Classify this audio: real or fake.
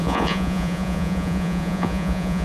fake